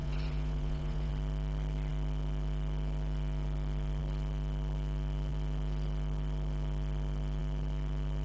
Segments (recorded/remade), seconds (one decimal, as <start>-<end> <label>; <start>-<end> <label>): 0.0-1.1 remade; 1.1-8.2 recorded